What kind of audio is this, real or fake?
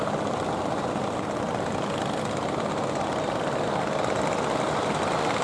real